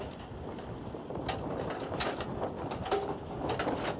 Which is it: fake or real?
real